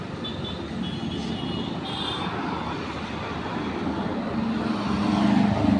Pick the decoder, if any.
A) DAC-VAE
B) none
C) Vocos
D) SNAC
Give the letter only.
B